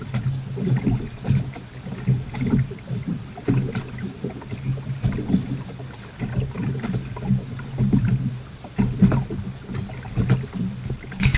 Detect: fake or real real